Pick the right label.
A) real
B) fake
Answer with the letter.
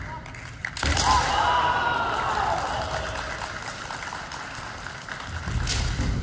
A